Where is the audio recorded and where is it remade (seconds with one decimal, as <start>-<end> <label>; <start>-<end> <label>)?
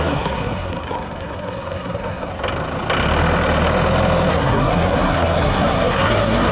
0.0-2.3 remade; 2.3-4.3 recorded; 4.3-6.5 remade